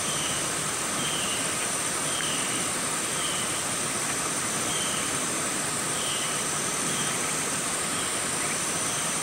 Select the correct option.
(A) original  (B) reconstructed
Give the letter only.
B